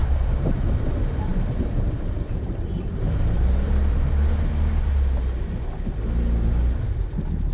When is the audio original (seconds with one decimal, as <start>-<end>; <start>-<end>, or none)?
0.9-1.3; 4.1-7.5